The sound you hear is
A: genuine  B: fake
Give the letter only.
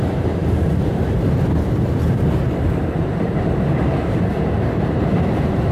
B